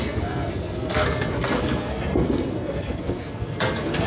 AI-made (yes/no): yes